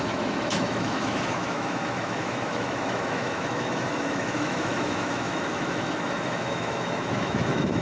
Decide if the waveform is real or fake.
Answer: fake